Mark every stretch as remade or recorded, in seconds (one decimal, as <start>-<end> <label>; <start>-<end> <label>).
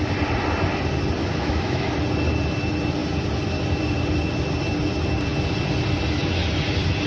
0.0-1.2 recorded; 1.2-1.9 remade; 1.9-7.1 recorded